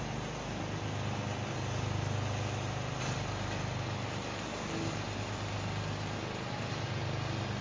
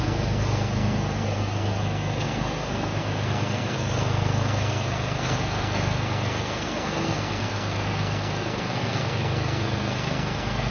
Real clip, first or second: first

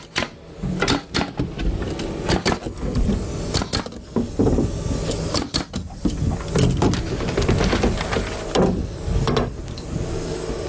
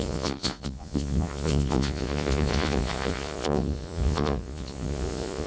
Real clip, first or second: first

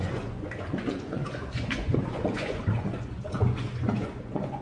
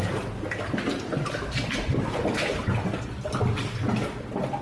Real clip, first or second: second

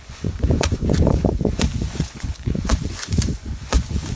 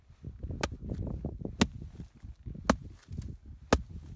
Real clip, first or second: second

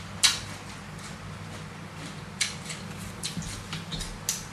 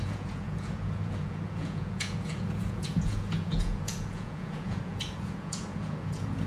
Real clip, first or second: first